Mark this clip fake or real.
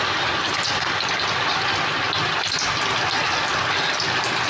real